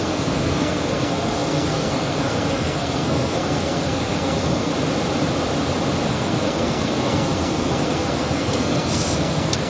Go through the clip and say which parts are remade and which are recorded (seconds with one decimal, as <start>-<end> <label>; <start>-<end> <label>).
0.0-4.7 remade; 4.7-6.1 recorded; 6.1-9.7 remade